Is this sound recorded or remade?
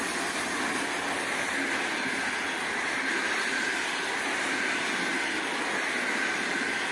recorded